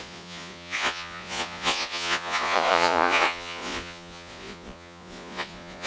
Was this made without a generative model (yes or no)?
no